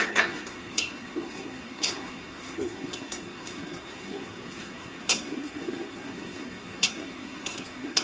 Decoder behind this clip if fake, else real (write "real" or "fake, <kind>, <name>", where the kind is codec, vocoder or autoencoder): fake, codec, SNAC